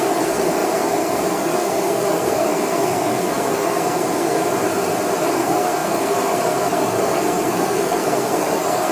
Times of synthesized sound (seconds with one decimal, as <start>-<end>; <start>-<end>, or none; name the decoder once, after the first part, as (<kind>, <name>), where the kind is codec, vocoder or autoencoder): 0.0-4.4 (codec, SNAC); 5.2-8.9